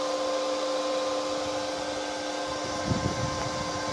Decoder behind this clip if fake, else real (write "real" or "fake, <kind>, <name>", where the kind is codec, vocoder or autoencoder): fake, vocoder, BigVGAN v2